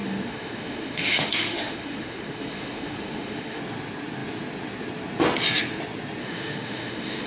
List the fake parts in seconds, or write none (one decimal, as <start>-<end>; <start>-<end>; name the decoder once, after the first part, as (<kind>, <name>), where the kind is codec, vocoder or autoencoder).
0.0-3.6 (autoencoder, DAC-VAE); 6.2-7.3